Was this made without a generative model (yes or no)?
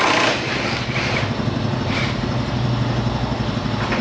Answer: yes